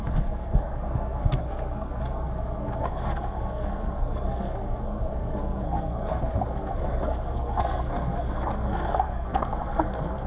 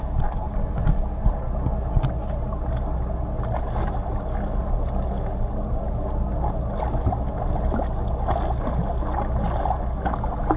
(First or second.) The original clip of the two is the second